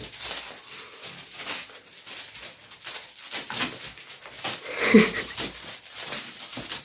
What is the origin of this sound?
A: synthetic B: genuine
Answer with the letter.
B